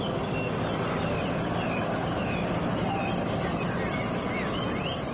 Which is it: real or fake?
real